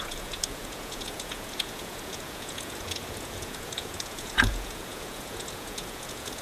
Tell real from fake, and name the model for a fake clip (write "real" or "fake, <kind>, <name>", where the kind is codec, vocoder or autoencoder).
fake, vocoder, Vocos